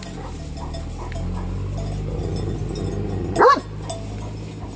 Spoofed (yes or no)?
no